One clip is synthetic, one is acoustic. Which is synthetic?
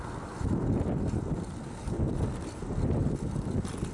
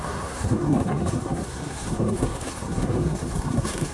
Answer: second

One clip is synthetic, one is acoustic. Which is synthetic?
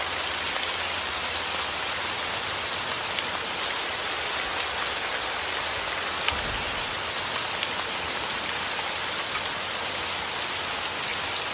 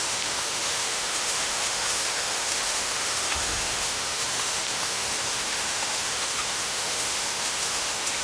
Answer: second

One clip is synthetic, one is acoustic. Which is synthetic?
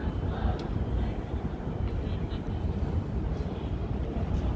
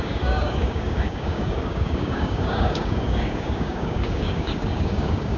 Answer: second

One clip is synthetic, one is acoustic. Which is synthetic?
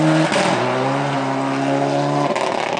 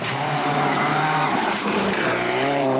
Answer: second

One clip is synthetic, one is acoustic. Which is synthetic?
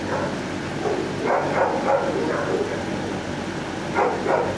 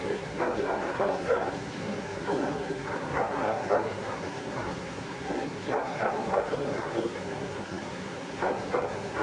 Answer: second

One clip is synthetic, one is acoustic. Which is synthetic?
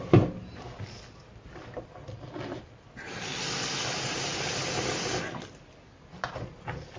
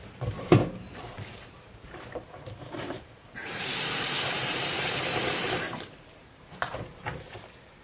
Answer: second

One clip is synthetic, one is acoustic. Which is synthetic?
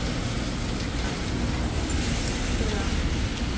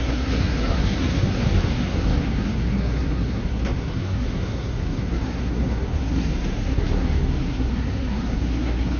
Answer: second